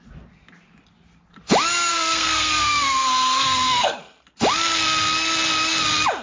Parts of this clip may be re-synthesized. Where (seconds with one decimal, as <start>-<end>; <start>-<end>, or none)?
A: 1.9-4.0